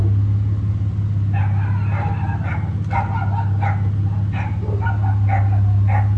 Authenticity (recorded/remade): recorded